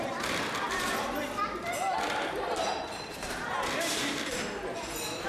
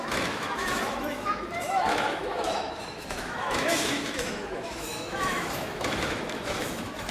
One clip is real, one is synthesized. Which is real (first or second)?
first